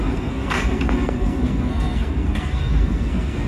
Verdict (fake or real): fake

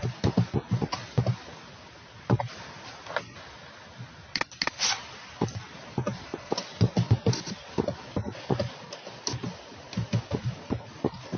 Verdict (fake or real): real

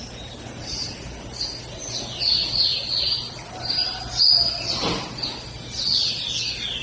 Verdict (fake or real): real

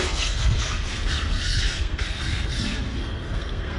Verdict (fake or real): fake